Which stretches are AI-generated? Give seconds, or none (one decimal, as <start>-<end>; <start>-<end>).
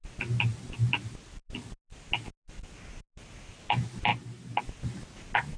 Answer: none